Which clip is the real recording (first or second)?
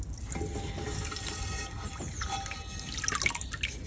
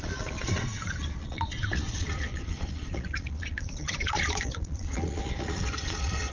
first